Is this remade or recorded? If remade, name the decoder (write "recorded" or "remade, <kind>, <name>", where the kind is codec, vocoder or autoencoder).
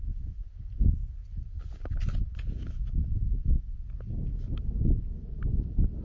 recorded